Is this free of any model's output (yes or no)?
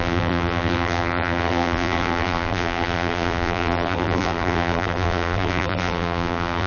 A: no